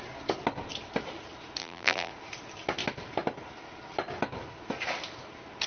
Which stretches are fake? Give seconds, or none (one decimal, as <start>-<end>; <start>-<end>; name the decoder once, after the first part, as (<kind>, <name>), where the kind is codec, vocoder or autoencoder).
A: 1.6-2.1 (vocoder, BigVGAN v2)